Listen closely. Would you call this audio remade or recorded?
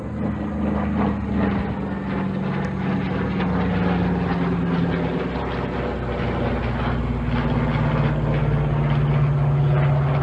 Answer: recorded